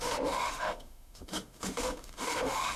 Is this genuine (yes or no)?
no